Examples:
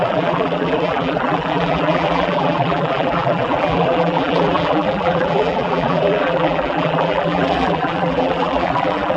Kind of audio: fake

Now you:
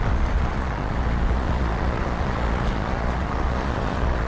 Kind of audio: fake